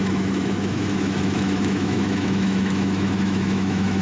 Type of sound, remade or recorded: remade